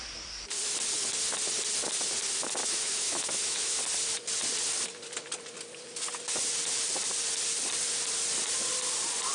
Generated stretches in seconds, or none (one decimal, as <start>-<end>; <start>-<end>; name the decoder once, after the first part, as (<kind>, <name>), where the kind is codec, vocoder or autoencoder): 2.6-3.8 (autoencoder, DAC-VAE)